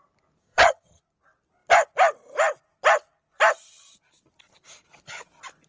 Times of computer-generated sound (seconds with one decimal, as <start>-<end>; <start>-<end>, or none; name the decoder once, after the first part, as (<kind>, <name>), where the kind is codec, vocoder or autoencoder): 0.4-1.0 (vocoder, HiFi-GAN)